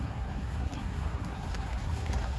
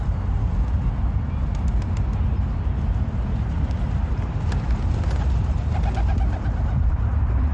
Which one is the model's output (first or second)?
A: first